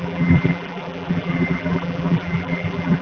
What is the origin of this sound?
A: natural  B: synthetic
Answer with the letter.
B